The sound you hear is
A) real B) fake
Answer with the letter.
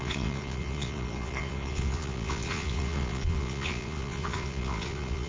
B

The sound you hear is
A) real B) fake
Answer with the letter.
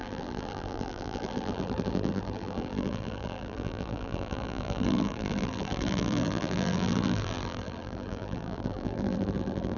B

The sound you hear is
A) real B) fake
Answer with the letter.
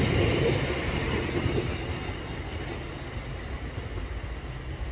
A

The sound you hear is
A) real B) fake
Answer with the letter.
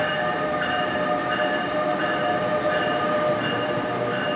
A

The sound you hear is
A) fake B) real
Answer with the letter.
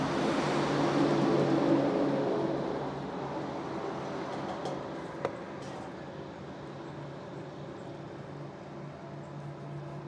B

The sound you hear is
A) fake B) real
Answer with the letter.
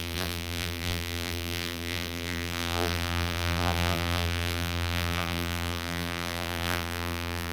A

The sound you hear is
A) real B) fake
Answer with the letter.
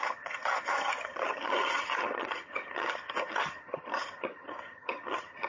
B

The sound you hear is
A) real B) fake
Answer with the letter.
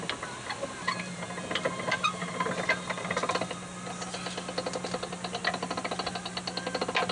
A